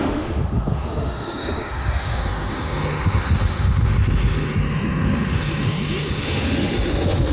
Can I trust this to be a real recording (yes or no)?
no